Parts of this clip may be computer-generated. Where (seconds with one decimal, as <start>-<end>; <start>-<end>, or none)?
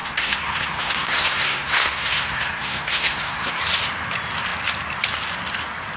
0.0-3.6